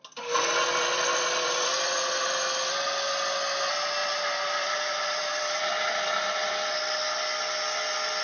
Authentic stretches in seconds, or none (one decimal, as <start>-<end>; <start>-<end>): 0.0-0.7; 2.3-4.0; 5.4-8.2